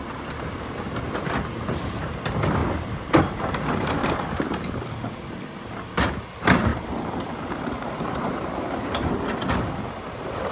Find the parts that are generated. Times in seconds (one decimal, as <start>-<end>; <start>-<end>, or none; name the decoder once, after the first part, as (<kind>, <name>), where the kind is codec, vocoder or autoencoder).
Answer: 2.6-4.7 (vocoder, BigVGAN v2); 6.7-8.3